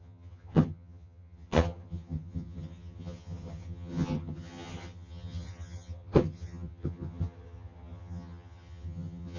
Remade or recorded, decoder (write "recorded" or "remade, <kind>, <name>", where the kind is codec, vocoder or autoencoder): remade, vocoder, HiFi-GAN